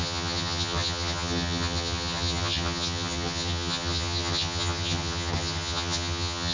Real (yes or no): no